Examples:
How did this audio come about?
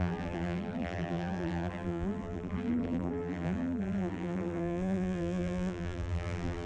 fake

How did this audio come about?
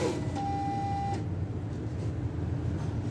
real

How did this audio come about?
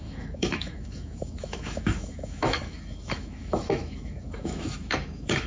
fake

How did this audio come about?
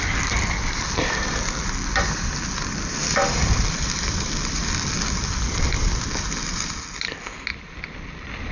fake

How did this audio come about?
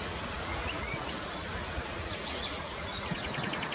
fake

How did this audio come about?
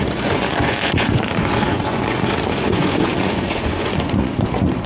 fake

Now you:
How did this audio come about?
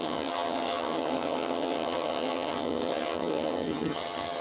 fake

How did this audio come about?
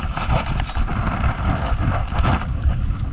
fake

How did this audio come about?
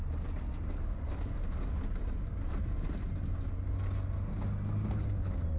real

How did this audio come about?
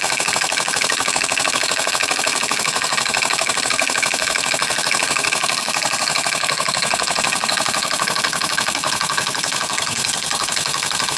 fake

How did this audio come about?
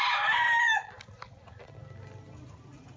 real